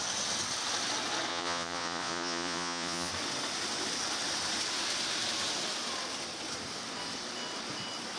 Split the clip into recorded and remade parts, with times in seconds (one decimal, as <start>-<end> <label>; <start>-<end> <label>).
0.0-1.3 recorded; 1.3-3.1 remade; 3.1-8.2 recorded